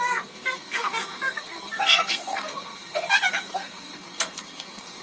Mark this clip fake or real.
fake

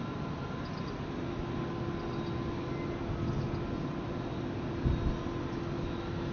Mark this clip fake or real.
real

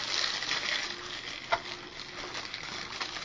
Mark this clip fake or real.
real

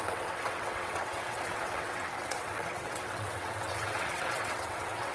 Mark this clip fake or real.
fake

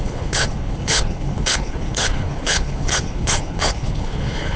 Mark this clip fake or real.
fake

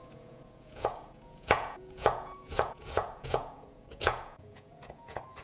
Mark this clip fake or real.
fake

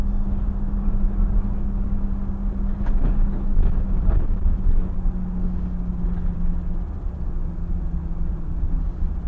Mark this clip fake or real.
real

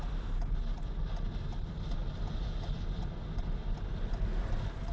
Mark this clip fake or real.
real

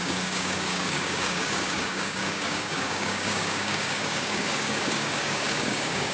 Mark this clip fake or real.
fake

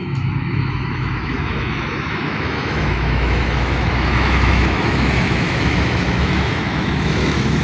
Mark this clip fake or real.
fake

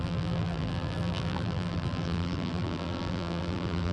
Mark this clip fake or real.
fake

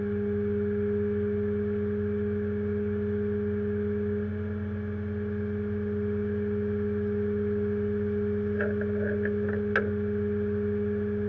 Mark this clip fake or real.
real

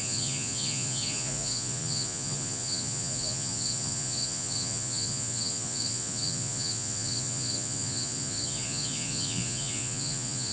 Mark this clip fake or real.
fake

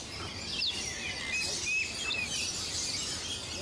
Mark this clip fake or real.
real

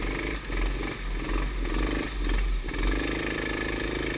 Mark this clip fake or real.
real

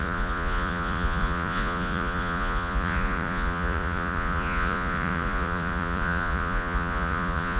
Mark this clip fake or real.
fake